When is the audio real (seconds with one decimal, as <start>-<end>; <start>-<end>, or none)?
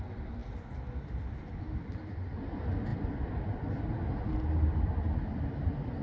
0.0-6.0